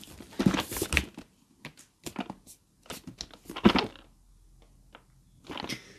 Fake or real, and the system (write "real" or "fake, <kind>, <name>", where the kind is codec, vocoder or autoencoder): real